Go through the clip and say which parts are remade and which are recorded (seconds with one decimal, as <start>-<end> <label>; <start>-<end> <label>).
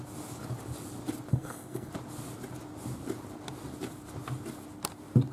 0.0-1.3 recorded; 1.3-1.9 remade; 1.9-5.3 recorded